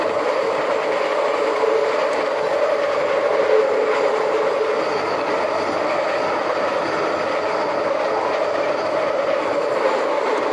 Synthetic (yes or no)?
no